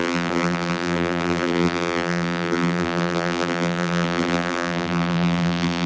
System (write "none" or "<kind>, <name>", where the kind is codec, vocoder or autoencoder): vocoder, BigVGAN v2